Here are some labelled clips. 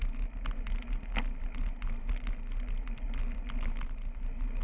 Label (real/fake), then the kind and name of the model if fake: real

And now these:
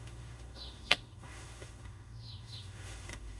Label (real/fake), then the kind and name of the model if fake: fake, autoencoder, DAC-VAE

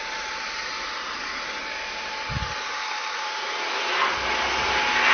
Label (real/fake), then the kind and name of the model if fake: real